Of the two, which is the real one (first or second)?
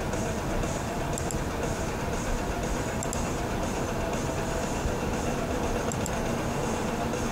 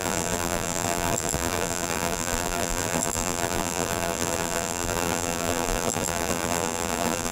first